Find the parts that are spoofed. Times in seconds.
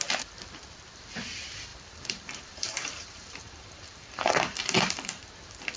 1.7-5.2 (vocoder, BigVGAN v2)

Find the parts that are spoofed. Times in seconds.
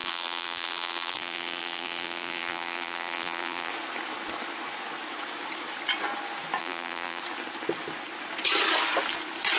0.0-3.7 (vocoder, BigVGAN v2); 6.6-7.2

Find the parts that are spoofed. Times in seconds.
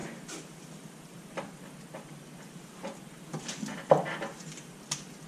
0.0-1.4 (vocoder, BigVGAN v2)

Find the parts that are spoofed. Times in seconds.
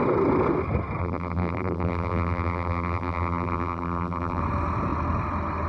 1.0-4.4 (vocoder, BigVGAN v2)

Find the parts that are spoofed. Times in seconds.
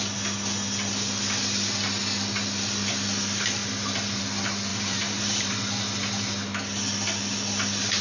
3.6-4.2 (vocoder, BigVGAN v2); 4.7-5.5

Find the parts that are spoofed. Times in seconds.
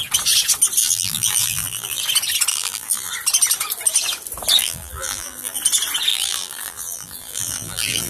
0.8-2.0 (vocoder, BigVGAN v2); 2.5-3.1; 4.6-5.6; 6.1-8.1